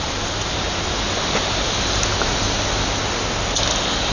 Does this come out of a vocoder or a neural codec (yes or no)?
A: no